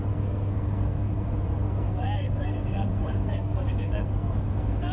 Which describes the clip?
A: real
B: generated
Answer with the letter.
B